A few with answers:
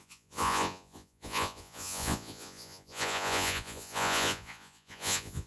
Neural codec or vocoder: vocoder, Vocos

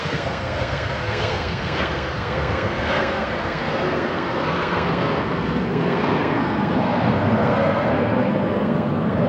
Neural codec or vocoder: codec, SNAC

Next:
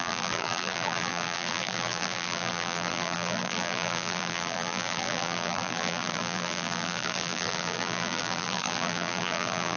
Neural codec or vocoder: vocoder, BigVGAN v2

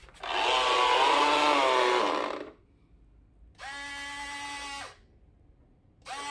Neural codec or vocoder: none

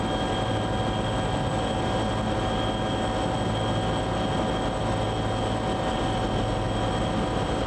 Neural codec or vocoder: none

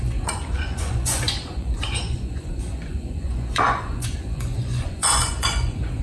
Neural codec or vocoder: vocoder, Vocos